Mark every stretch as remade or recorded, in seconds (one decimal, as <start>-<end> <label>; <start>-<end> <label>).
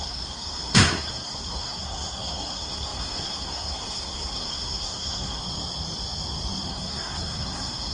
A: 0.0-5.4 remade; 5.4-6.7 recorded; 6.7-7.9 remade